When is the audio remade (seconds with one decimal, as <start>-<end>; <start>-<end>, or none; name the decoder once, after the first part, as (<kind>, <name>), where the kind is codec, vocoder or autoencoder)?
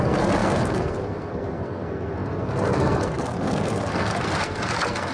0.0-5.1 (codec, SNAC)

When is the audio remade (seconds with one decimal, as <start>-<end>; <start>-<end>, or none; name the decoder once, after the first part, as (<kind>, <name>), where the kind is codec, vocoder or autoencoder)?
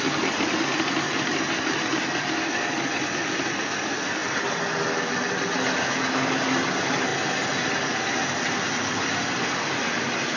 none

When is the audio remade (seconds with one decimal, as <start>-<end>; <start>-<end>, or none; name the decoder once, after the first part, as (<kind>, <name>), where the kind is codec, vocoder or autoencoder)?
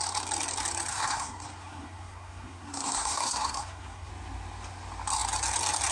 0.9-4.1 (codec, SNAC)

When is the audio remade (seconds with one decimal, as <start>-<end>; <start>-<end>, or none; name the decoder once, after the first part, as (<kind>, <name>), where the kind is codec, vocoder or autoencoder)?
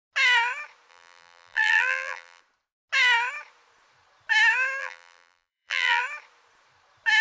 0.9-2.4 (vocoder, BigVGAN v2); 4.8-6.0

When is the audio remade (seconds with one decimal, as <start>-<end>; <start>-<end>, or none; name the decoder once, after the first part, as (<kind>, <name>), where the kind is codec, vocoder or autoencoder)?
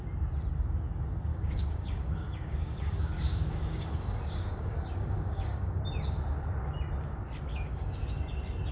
1.3-5.8 (codec, DAC); 7.5-8.1